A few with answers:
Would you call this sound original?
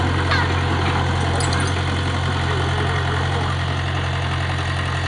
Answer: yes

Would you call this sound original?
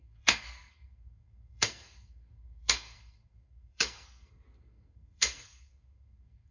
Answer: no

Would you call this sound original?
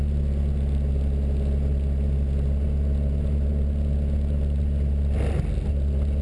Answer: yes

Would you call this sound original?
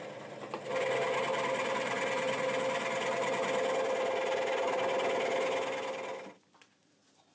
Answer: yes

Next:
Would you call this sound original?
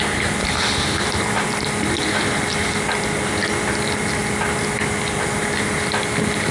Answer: yes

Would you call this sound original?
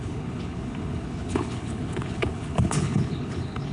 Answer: no